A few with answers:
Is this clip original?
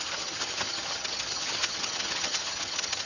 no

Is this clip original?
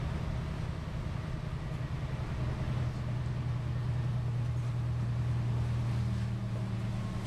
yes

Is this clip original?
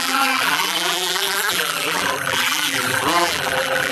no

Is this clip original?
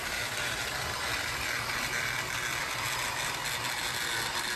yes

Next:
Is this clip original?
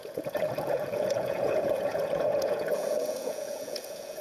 no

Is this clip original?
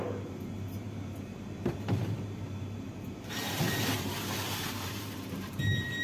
no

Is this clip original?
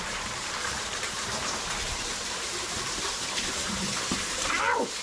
no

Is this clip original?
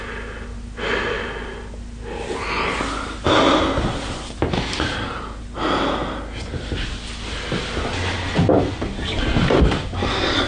yes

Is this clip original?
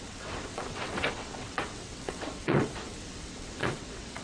no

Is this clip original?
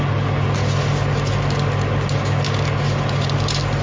yes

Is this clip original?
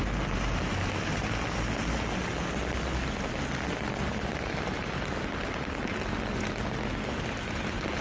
yes